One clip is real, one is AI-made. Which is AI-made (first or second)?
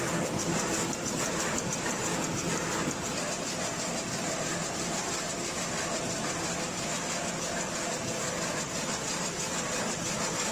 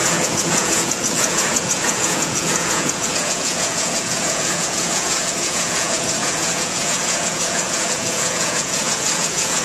second